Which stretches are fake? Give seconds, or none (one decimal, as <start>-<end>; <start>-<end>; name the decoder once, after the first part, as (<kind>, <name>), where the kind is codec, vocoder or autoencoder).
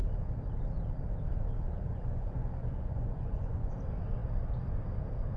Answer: 1.9-3.7 (vocoder, Vocos)